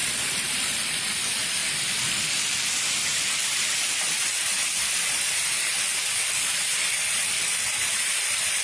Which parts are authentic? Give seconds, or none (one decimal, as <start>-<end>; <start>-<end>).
0.0-8.6